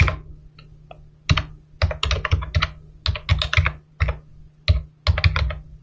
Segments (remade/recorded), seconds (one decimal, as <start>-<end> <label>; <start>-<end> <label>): 0.0-5.8 recorded